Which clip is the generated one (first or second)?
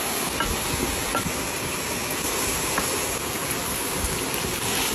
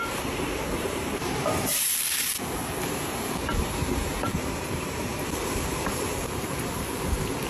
second